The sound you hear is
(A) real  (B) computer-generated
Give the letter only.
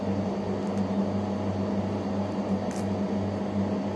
A